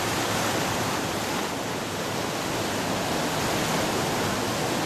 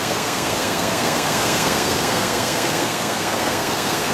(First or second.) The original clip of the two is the first